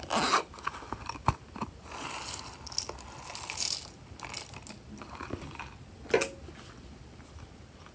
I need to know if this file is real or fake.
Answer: real